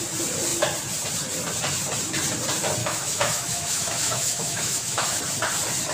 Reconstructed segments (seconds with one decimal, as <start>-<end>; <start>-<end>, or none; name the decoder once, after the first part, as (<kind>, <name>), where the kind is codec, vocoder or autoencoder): 2.8-5.2 (autoencoder, DAC-VAE)